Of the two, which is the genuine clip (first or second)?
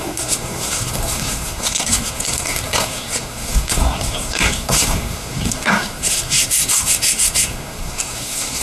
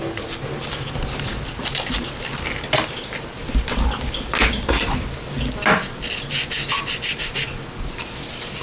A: second